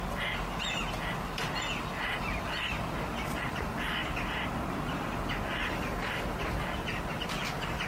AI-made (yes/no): no